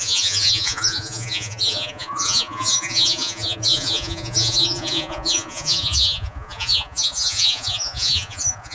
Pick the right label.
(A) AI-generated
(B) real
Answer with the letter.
A